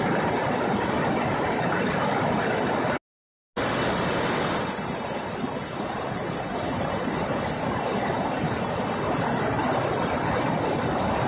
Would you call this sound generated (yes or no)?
no